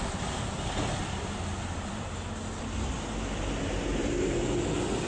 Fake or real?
real